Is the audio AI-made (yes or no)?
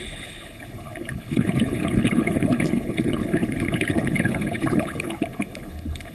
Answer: yes